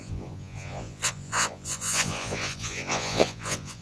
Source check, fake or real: fake